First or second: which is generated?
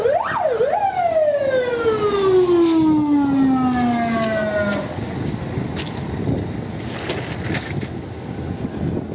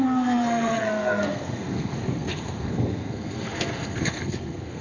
second